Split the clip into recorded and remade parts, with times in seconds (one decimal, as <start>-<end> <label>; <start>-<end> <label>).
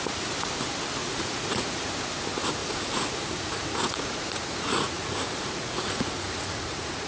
0.0-1.0 recorded; 1.0-1.9 remade; 1.9-2.6 recorded; 2.6-7.1 remade